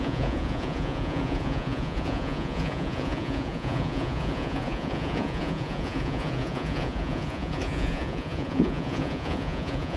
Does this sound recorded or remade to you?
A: remade